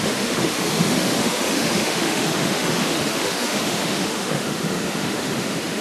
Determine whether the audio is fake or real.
fake